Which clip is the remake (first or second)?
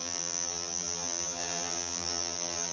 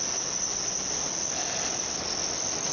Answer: first